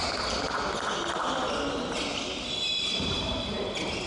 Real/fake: real